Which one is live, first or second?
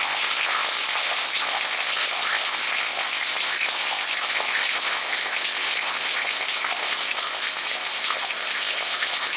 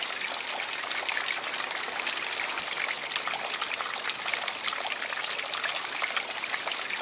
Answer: second